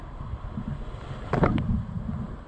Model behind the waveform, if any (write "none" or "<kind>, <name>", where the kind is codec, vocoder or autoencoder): none